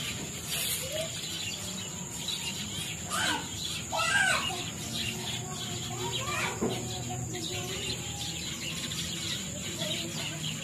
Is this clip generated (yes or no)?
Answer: no